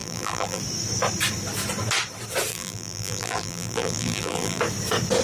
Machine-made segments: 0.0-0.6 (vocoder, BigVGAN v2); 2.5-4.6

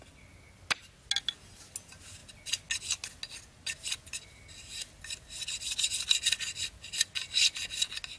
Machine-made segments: none

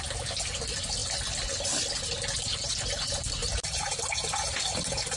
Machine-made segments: 3.4-4.0 (vocoder, BigVGAN v2)

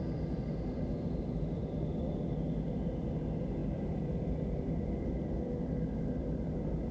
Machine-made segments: none

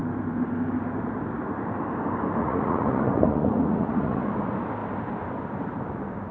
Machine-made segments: 2.4-4.2 (vocoder, Vocos)